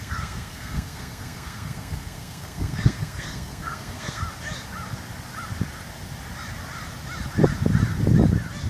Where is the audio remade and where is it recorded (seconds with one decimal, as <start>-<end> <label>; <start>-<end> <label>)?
0.0-4.2 remade; 4.2-8.7 recorded